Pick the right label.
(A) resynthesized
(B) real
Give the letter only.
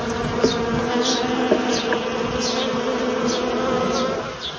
B